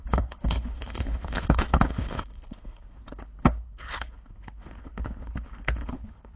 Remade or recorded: remade